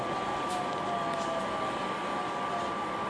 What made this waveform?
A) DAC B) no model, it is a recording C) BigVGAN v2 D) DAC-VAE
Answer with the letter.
B